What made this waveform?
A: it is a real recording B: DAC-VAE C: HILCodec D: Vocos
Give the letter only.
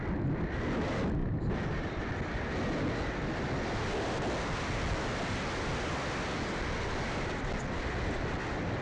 A